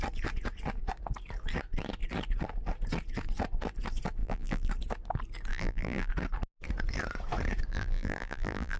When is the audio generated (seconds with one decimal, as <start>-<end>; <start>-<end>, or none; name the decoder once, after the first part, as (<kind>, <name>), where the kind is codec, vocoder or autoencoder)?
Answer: 4.2-4.7 (vocoder, BigVGAN v2); 5.5-6.1; 7.7-8.8